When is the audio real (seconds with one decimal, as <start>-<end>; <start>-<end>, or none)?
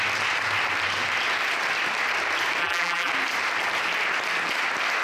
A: 0.0-2.6; 3.1-5.0